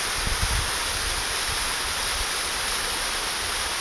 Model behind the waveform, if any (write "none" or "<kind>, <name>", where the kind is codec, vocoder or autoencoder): none